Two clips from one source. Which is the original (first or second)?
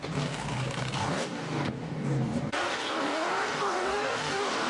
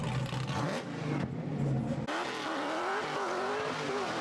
second